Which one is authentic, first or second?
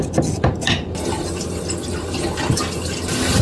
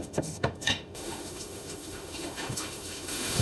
first